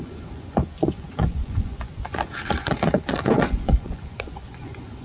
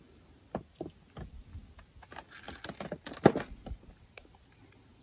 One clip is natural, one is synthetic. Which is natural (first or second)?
second